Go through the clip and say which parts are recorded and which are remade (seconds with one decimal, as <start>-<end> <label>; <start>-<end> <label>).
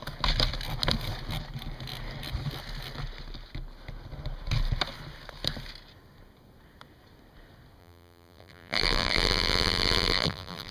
0.0-7.8 recorded; 7.8-10.7 remade